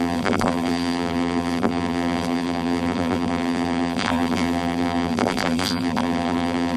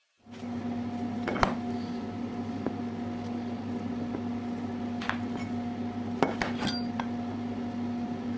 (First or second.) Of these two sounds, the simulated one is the first